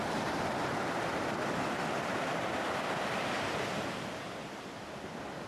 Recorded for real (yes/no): no